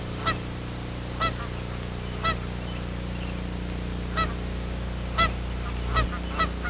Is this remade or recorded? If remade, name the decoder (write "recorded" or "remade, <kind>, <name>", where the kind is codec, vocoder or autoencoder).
recorded